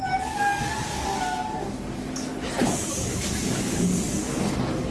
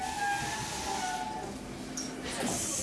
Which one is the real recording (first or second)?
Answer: second